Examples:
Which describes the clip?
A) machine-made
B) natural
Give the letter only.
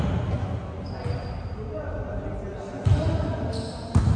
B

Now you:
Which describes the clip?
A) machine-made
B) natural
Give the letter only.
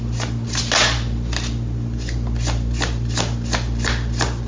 B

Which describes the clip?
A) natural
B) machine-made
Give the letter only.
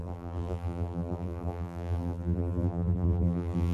B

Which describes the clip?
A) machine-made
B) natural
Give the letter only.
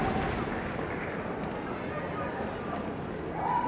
B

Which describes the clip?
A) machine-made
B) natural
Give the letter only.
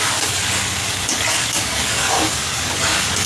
A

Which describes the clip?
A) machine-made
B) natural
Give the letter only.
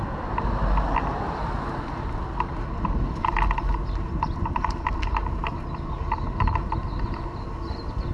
B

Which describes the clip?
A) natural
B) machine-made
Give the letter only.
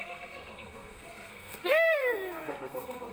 B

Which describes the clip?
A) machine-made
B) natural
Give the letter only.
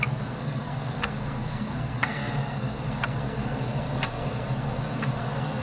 A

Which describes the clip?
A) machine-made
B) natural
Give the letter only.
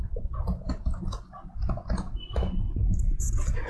B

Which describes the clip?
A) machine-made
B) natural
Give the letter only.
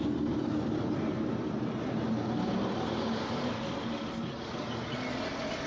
B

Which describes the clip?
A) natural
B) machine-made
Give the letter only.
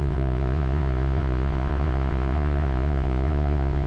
B